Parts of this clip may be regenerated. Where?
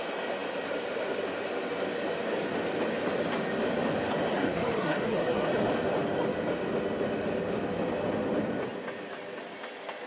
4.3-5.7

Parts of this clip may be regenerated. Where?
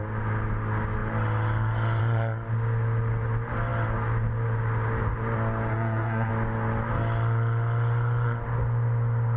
5.7-6.3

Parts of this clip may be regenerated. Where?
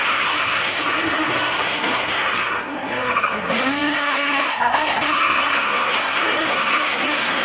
0.0-7.4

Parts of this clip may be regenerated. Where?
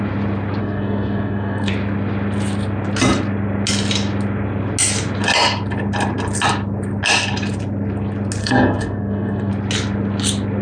0.6-1.7; 8.4-9.5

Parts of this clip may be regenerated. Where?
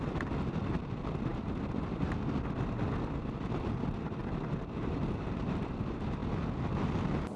none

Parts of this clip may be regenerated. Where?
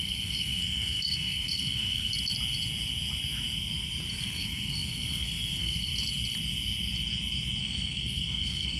0.0-2.1; 4.2-5.9; 7.6-8.8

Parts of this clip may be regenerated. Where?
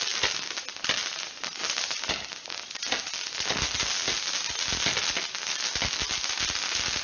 none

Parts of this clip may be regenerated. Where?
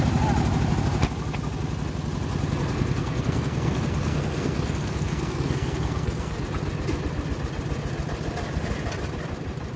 2.7-6.4